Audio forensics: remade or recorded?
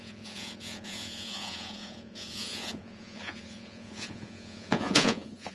remade